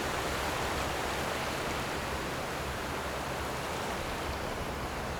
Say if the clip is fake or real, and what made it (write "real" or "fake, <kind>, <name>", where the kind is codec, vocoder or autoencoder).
fake, vocoder, BigVGAN v2